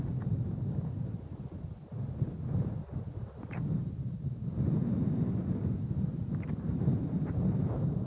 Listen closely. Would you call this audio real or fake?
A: real